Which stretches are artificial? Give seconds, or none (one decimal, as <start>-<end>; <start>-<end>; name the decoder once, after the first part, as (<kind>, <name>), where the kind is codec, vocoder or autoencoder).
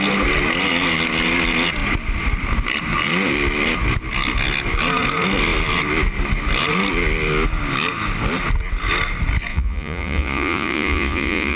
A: 9.5-11.6 (vocoder, Vocos)